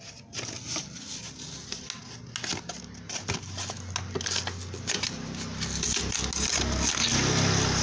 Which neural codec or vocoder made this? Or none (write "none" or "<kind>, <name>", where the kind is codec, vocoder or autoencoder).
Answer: none